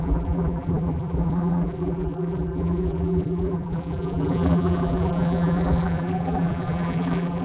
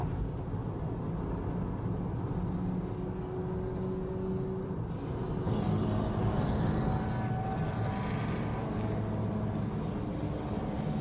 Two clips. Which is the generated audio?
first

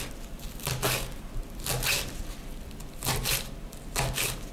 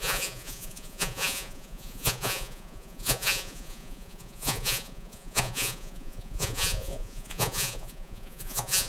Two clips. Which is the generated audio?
second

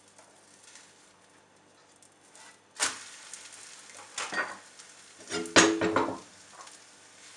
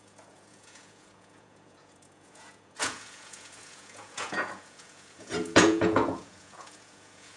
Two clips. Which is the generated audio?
second